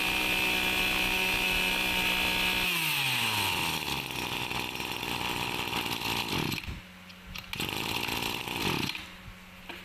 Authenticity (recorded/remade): recorded